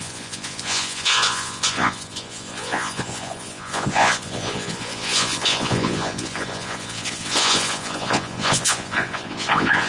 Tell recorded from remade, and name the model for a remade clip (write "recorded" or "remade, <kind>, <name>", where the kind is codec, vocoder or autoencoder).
remade, vocoder, Vocos